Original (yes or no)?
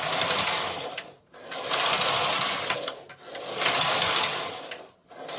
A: yes